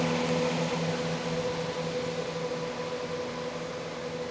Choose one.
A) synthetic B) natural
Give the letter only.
B